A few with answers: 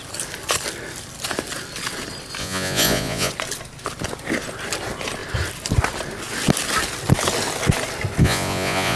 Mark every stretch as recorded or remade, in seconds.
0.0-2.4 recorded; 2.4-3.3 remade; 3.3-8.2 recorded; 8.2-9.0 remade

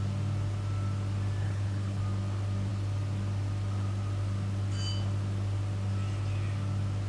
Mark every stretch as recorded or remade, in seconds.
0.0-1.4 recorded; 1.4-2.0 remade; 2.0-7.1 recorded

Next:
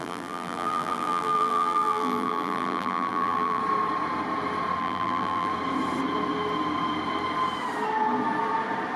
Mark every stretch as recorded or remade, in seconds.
0.0-3.6 remade; 3.6-4.8 recorded; 4.8-5.5 remade; 5.5-9.0 recorded

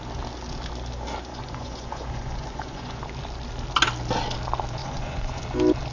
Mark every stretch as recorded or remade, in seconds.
0.0-1.3 recorded; 1.3-3.0 remade; 3.0-4.8 recorded; 4.8-5.4 remade; 5.4-5.9 recorded

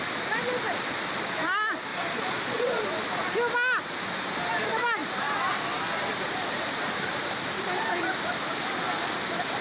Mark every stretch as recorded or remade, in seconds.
0.0-1.9 recorded; 1.9-2.8 remade; 2.8-9.6 recorded

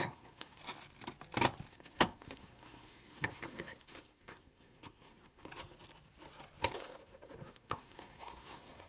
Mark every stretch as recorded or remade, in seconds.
0.0-0.6 remade; 0.6-1.7 recorded; 1.7-5.5 remade; 5.5-6.6 recorded; 6.6-8.9 remade